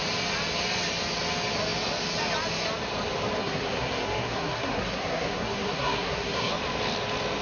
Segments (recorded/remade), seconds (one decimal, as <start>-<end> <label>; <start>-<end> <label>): 0.0-3.4 recorded; 3.4-6.5 remade; 6.5-7.4 recorded